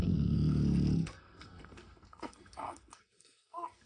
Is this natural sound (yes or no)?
no